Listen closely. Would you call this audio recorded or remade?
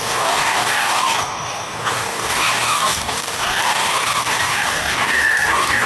remade